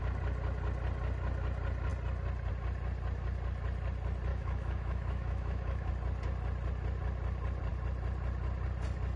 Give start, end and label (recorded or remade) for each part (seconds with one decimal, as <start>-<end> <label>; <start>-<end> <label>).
0.0-4.3 recorded; 4.3-5.9 remade; 5.9-9.2 recorded